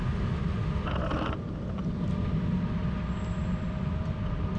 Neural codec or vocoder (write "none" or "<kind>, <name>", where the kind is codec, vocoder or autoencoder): none